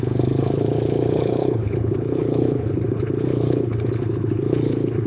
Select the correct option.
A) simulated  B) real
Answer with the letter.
A